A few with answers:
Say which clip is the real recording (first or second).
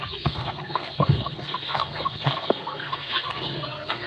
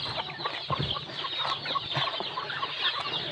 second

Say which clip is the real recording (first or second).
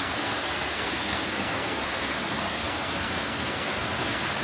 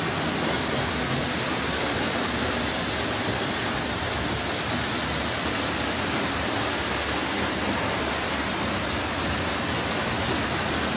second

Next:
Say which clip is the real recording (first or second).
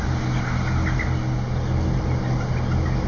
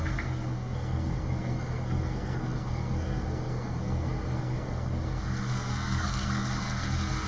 first